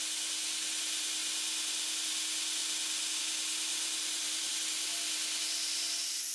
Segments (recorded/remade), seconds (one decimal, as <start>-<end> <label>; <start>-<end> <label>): 0.0-3.7 recorded; 3.7-4.5 remade; 4.5-6.3 recorded